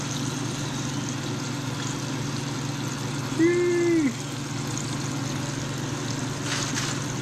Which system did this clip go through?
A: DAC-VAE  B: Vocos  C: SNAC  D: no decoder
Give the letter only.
D